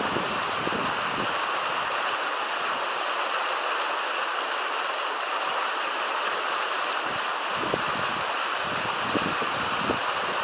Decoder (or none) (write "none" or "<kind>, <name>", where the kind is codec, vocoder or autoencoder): none